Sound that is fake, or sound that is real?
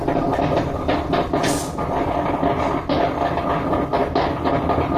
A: real